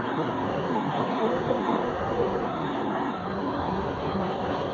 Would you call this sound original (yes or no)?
no